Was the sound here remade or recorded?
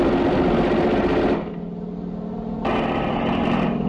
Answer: recorded